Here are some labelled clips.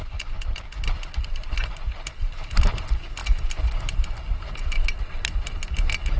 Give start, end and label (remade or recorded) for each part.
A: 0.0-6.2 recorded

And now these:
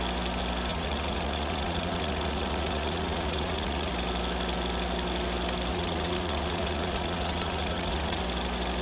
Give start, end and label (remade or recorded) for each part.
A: 0.0-0.7 recorded; 0.7-3.9 remade; 3.9-5.7 recorded; 5.7-8.2 remade; 8.2-8.8 recorded

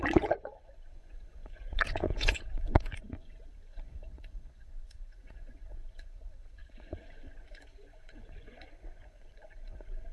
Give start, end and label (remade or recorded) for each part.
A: 0.0-10.1 remade

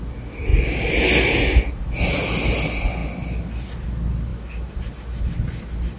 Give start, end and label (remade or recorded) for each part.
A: 0.0-6.0 recorded

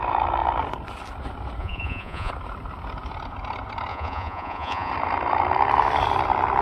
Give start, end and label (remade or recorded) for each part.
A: 0.0-1.6 recorded; 1.6-2.3 remade; 2.3-3.9 recorded; 3.9-4.9 remade; 4.9-6.6 recorded

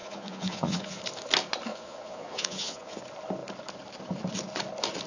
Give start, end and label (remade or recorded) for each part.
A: 0.0-1.0 remade; 1.0-1.7 recorded; 1.7-3.0 remade; 3.0-5.1 recorded